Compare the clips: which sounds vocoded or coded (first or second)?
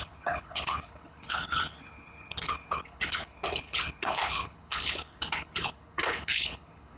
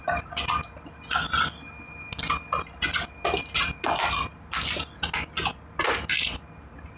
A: first